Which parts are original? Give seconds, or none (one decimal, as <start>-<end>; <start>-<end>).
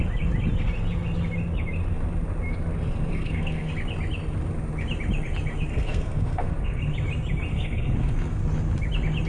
0.0-3.1; 3.7-5.7; 6.8-7.5; 8.4-9.3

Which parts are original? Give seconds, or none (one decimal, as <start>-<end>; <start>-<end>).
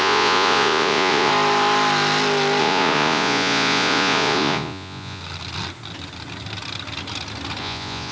1.3-2.6; 5.2-7.6